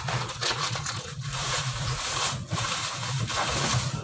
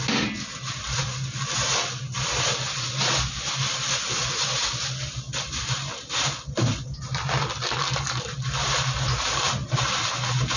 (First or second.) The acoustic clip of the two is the second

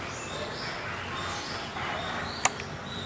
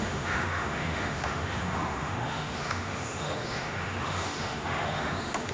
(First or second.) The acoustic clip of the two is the first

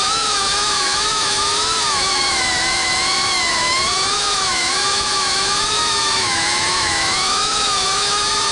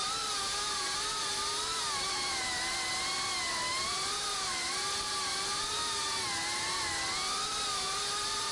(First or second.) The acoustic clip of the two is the second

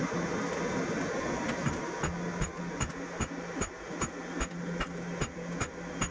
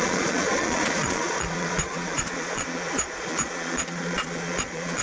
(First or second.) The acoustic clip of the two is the first